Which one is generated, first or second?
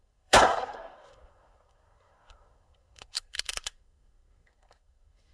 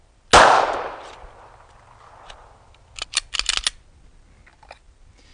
first